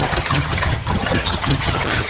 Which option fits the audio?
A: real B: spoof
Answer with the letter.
B